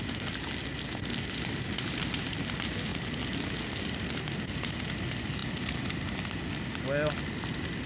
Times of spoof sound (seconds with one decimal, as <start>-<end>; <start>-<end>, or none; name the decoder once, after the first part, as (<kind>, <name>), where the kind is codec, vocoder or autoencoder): none